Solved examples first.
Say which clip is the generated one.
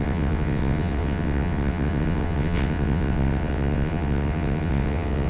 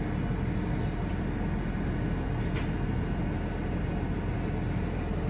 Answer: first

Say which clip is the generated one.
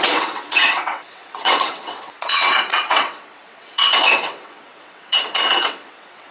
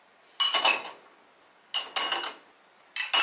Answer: first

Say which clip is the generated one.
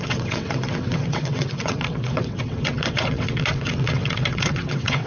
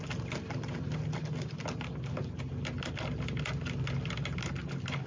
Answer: first